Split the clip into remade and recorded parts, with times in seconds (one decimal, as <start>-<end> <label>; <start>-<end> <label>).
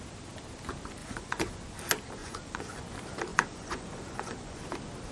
0.0-1.0 recorded; 1.0-1.6 remade; 1.6-2.2 recorded; 2.2-2.8 remade; 2.8-3.3 recorded; 3.3-4.6 remade; 4.6-5.1 recorded